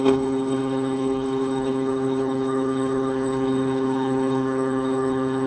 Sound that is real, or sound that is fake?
fake